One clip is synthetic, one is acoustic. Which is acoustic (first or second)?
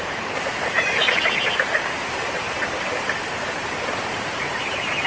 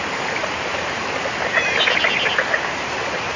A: second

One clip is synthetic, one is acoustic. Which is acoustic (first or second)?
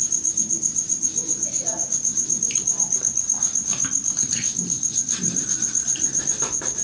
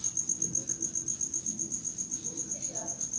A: second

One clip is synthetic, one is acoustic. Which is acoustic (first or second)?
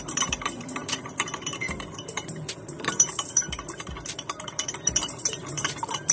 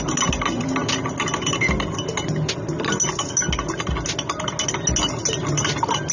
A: second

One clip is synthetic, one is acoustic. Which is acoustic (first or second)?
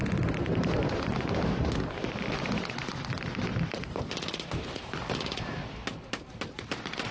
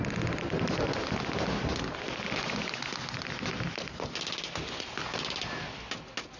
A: second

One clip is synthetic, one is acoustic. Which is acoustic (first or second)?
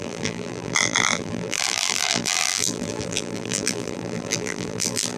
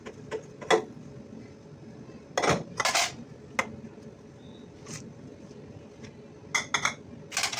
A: second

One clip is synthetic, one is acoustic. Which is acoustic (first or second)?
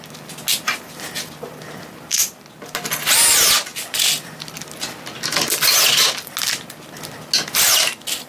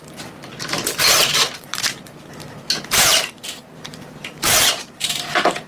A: first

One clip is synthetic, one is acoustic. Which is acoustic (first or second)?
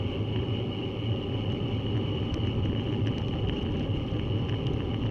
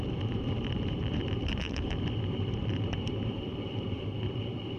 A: first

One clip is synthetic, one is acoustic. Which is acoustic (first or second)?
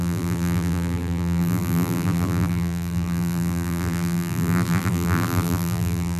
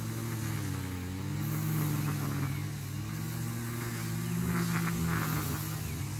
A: second